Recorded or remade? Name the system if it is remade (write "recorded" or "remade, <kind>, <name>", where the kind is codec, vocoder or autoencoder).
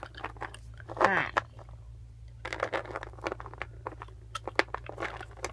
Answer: recorded